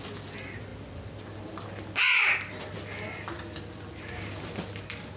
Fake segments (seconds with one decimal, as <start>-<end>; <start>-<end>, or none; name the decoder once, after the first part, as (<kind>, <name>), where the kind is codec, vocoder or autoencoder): none